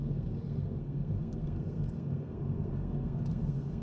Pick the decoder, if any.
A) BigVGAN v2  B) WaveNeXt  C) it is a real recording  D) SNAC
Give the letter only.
D